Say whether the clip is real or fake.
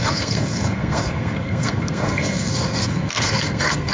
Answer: fake